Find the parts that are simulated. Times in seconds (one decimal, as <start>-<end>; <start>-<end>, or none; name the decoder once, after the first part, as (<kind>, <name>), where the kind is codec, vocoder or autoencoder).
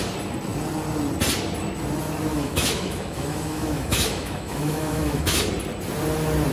2.3-5.5 (autoencoder, DAC-VAE)